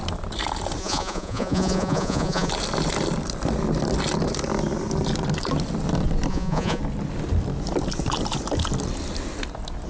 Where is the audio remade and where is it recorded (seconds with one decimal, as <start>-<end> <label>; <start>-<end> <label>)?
0.0-0.8 recorded; 0.8-2.5 remade; 2.5-6.3 recorded; 6.3-6.8 remade; 6.8-9.9 recorded